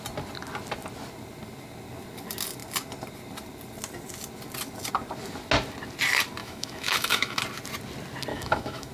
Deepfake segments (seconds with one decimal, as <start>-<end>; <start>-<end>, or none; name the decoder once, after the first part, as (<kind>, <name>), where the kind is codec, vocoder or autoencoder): 6.4-7.4 (autoencoder, DAC-VAE); 8.3-8.9